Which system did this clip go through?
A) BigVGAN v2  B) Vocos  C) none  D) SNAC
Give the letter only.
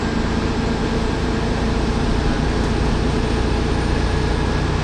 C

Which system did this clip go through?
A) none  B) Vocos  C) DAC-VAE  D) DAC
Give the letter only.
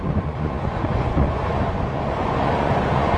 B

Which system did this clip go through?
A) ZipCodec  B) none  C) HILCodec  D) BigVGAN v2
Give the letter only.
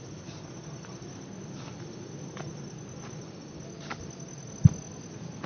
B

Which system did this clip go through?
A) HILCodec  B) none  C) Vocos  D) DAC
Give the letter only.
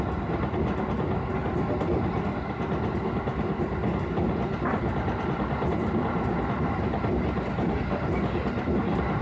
B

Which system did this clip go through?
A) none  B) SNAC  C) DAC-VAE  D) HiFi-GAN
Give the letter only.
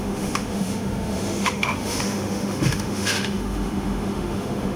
C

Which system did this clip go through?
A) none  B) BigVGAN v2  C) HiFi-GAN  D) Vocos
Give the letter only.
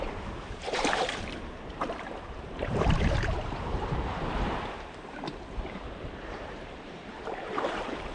B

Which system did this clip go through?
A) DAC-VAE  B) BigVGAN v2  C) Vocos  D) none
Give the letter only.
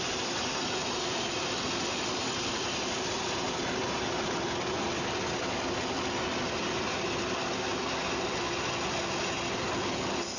D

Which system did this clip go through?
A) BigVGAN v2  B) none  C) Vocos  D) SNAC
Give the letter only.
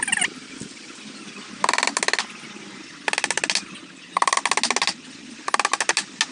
B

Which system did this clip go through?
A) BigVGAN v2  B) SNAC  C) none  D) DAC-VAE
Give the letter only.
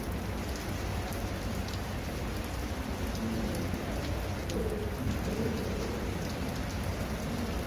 C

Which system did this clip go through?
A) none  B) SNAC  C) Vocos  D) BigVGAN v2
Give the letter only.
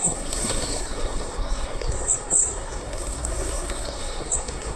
B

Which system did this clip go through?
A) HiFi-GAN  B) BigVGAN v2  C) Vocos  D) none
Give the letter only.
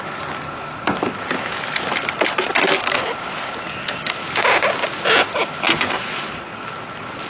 D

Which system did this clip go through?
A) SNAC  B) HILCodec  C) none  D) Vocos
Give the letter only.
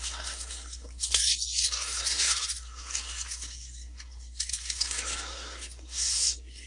A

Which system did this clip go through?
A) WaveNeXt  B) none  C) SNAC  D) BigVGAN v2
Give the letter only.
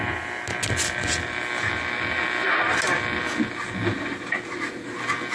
B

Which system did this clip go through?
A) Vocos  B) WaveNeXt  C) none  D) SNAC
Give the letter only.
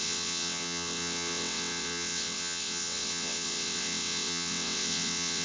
B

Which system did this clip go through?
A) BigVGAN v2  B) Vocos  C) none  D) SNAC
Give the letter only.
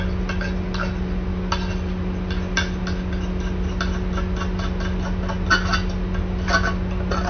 C